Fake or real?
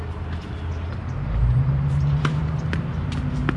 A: real